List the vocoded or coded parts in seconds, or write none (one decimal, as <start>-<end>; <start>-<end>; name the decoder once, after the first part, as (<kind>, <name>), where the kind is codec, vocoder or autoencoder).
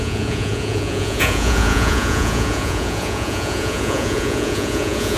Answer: 0.0-5.2 (vocoder, Vocos)